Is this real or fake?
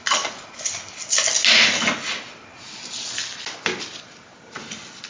real